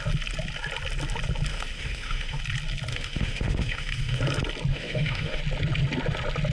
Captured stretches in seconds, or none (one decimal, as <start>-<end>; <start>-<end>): 0.0-1.5; 2.4-2.9; 4.2-4.7; 5.4-6.5